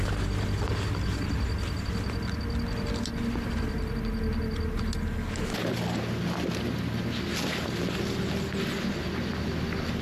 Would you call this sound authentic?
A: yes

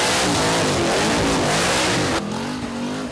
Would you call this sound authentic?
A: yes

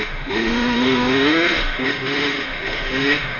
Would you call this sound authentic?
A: no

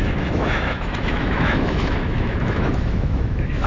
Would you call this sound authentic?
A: no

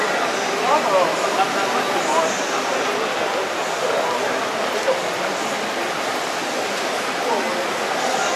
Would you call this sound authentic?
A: yes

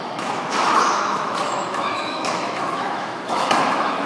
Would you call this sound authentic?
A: no